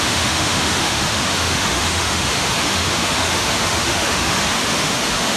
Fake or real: fake